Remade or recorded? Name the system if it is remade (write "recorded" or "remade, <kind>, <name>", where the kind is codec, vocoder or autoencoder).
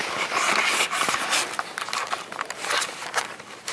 recorded